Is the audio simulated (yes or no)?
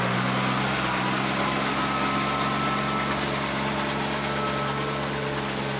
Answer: no